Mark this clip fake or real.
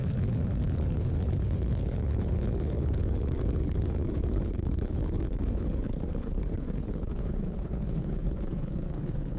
fake